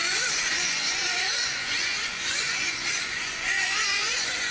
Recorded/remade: remade